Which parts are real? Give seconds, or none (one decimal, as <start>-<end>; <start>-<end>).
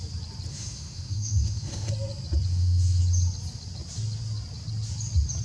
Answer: 0.0-0.5; 1.9-2.5; 3.0-5.4